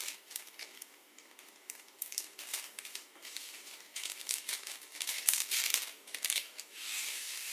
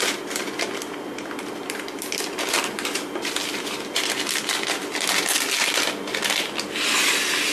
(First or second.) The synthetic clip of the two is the first